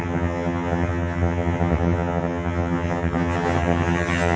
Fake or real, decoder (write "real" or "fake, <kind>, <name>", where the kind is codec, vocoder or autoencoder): fake, vocoder, HiFi-GAN